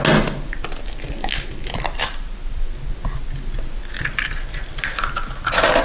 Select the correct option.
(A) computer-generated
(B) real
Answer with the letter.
B